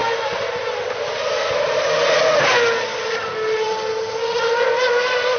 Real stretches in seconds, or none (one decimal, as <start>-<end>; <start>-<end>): 0.0-5.4